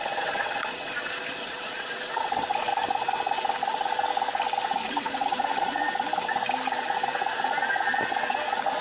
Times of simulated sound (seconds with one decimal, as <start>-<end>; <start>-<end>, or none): 0.0-2.7; 4.9-5.8